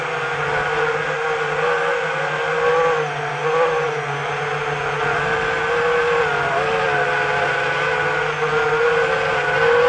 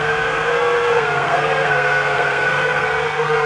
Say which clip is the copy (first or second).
second